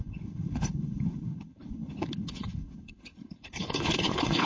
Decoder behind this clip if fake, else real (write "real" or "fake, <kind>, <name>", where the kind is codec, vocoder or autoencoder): fake, codec, HILCodec